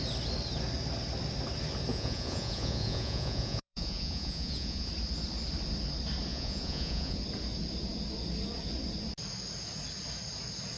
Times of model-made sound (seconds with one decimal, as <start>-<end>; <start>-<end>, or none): 1.9-4.9; 6.3-7.2